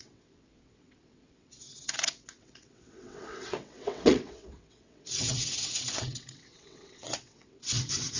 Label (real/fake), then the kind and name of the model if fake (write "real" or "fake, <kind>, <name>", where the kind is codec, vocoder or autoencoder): fake, vocoder, WaveNeXt